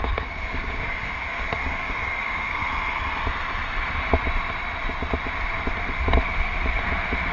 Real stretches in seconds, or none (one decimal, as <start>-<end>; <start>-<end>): 2.6-7.3